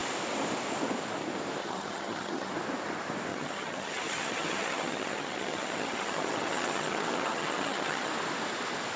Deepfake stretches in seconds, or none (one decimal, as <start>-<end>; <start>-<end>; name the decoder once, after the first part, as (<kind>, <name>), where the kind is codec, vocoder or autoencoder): 1.6-2.5 (vocoder, HiFi-GAN); 3.3-8.1